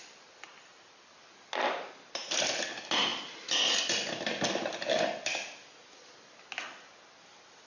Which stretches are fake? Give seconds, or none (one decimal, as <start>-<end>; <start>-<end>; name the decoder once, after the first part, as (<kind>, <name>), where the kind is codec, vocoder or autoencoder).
none